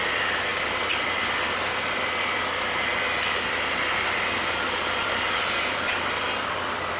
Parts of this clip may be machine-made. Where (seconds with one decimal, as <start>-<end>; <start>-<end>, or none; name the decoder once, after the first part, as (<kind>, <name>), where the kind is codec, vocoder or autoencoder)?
0.0-7.0 (vocoder, BigVGAN v2)